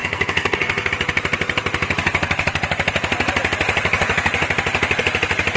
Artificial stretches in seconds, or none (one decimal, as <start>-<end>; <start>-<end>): 0.0-0.9